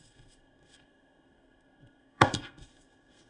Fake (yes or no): yes